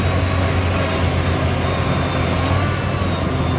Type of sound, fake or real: real